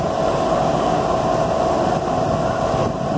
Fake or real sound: real